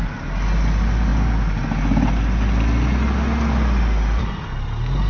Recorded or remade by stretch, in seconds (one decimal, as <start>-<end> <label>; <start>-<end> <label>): 0.0-5.1 recorded